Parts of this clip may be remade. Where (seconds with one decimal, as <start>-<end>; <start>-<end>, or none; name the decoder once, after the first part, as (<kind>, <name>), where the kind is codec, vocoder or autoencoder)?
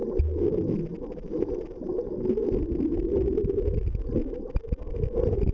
none